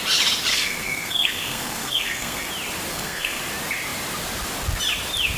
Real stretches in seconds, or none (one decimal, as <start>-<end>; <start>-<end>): 0.0-0.5; 2.5-2.9; 3.4-5.4